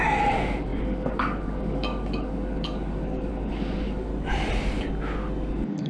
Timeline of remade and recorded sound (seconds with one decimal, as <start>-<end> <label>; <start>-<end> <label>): 0.0-4.1 remade; 4.1-5.5 recorded; 5.5-5.9 remade